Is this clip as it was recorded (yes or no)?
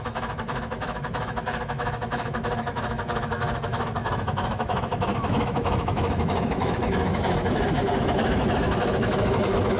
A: no